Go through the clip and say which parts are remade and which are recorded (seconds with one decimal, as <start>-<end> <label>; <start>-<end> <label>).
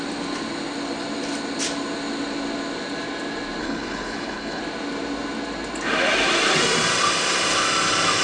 0.0-3.6 recorded; 3.6-4.6 remade; 4.6-8.2 recorded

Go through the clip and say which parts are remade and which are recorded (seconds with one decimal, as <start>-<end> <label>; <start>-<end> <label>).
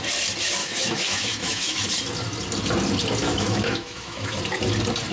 0.0-0.6 recorded; 0.6-1.9 remade; 1.9-3.2 recorded; 3.2-4.4 remade; 4.4-5.1 recorded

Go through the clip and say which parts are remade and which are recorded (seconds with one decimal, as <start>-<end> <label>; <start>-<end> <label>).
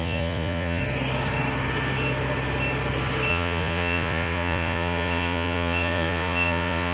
0.0-0.8 remade; 0.8-3.3 recorded; 3.3-6.9 remade